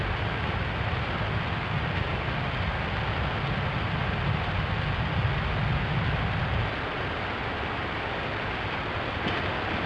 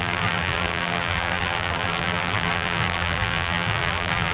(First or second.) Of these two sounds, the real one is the first